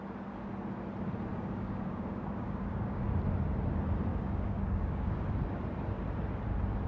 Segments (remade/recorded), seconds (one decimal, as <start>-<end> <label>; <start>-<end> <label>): 0.0-1.3 recorded; 1.3-3.1 remade; 3.1-4.1 recorded; 4.1-5.2 remade; 5.2-6.9 recorded

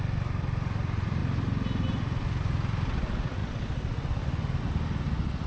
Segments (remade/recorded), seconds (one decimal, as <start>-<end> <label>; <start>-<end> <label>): 0.0-5.5 recorded

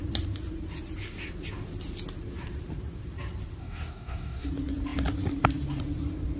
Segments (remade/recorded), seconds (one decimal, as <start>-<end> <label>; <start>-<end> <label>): 0.0-3.6 recorded; 3.6-4.5 remade; 4.5-6.4 recorded

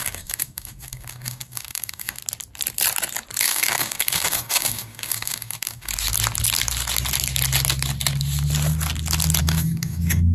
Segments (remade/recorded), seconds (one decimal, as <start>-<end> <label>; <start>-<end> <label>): 0.0-2.2 remade; 2.2-3.4 recorded; 3.4-5.9 remade; 5.9-9.4 recorded; 9.4-10.3 remade

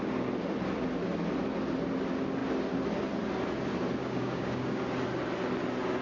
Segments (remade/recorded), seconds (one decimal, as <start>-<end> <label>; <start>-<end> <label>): 0.0-4.0 recorded; 4.0-4.8 remade; 4.8-6.0 recorded

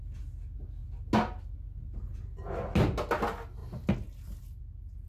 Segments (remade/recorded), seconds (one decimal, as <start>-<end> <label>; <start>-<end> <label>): 0.0-5.1 recorded

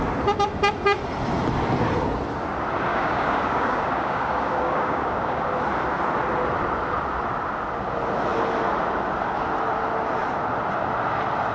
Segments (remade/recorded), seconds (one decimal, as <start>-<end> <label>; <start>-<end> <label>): 0.0-2.9 recorded; 2.9-5.4 remade; 5.4-11.5 recorded